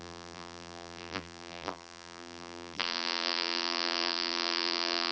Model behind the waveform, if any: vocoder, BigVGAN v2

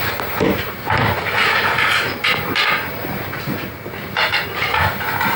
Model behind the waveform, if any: vocoder, BigVGAN v2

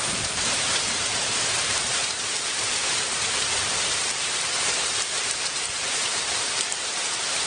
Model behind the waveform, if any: vocoder, BigVGAN v2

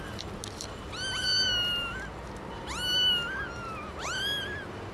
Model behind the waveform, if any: none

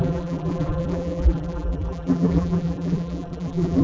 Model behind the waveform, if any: vocoder, BigVGAN v2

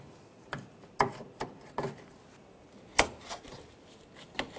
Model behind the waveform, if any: none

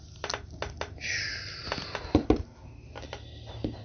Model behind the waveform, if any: none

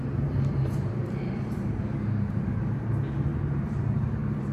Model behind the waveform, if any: vocoder, BigVGAN v2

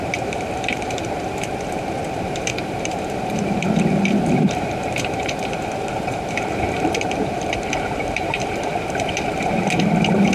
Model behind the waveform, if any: vocoder, BigVGAN v2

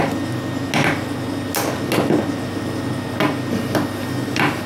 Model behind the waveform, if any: none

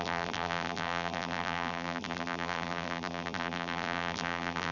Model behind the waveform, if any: vocoder, BigVGAN v2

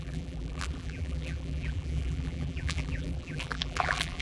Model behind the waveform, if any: vocoder, BigVGAN v2